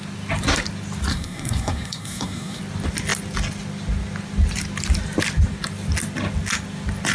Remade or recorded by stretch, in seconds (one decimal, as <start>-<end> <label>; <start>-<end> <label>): 0.0-1.1 recorded; 1.1-2.6 remade; 2.6-7.1 recorded